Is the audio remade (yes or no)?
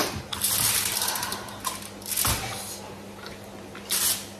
no